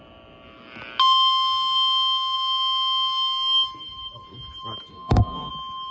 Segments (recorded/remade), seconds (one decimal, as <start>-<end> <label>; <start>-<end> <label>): 0.0-4.9 recorded; 4.9-5.5 remade; 5.5-5.9 recorded